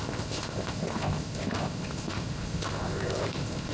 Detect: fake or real fake